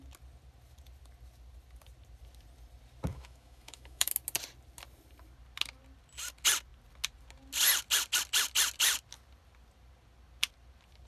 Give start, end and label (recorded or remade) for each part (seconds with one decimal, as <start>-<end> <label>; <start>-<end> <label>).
0.0-3.1 recorded; 3.1-4.1 remade; 4.1-11.1 recorded